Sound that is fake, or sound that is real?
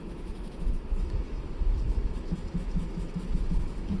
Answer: fake